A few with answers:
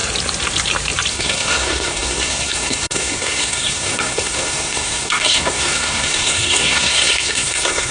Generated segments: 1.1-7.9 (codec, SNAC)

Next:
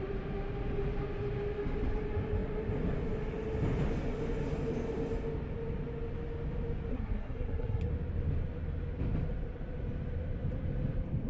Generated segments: 6.9-7.9 (codec, SNAC)